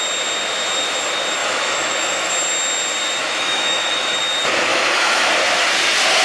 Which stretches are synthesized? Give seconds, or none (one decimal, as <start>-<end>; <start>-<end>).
1.4-2.3; 3.2-4.2; 4.7-5.3